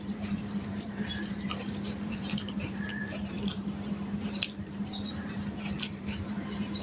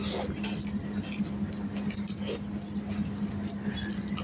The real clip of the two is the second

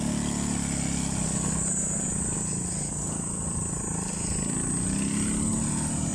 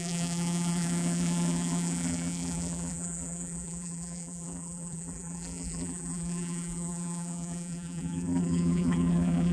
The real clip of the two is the first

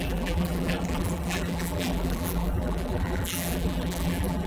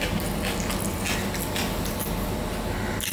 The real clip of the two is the second